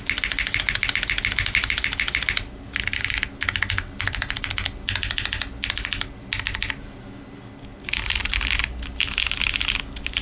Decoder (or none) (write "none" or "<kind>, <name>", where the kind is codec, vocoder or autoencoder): none